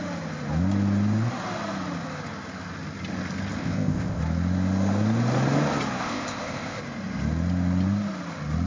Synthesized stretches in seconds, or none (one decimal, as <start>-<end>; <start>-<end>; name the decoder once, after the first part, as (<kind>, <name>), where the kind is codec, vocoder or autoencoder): 3.6-4.2 (codec, ZipCodec); 6.0-6.8